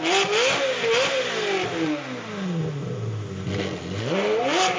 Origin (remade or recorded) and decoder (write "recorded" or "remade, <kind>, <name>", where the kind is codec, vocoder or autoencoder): recorded